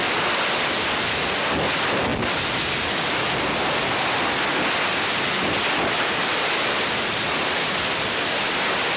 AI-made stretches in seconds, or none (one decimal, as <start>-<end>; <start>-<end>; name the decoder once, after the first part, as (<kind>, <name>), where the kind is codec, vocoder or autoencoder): none